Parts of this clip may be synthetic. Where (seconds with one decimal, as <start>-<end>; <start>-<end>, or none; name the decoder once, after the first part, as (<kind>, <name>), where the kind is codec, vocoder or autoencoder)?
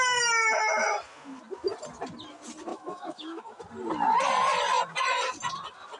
2.7-3.6 (autoencoder, DAC-VAE)